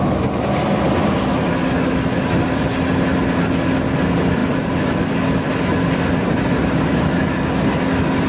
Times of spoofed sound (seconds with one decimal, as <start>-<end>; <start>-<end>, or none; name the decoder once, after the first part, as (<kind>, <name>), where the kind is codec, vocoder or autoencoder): 4.4-5.2 (vocoder, BigVGAN v2)